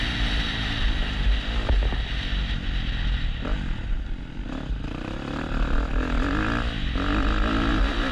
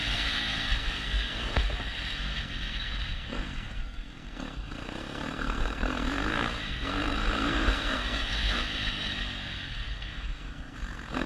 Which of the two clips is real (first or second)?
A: first